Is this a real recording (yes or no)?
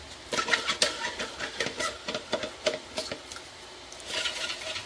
yes